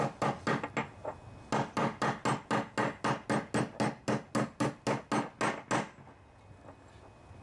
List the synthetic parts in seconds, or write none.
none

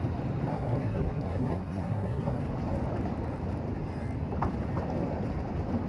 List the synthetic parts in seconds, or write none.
0.5-2.4 (codec, SNAC)

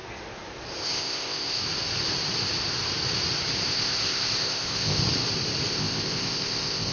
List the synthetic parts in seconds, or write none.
0.8-1.6 (codec, ZipCodec); 3.7-5.0; 5.7-6.9

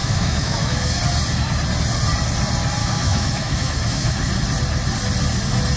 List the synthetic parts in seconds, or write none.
0.0-1.0 (autoencoder, DAC-VAE); 2.8-4.3

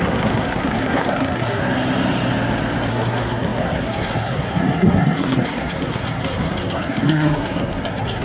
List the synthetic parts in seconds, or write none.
0.0-1.6 (codec, SNAC); 2.9-8.2

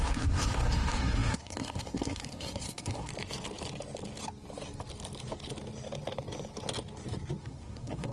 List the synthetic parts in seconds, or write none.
0.0-3.1 (codec, SNAC); 7.4-8.1